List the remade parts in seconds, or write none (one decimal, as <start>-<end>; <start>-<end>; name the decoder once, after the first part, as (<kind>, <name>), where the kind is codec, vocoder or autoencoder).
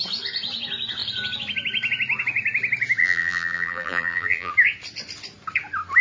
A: 3.0-4.5 (vocoder, BigVGAN v2)